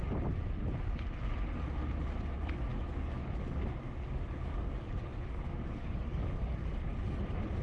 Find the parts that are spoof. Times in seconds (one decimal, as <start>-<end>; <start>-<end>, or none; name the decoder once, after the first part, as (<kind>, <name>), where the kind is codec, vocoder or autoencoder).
2.7-6.7 (codec, DAC)